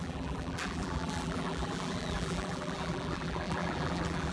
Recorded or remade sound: remade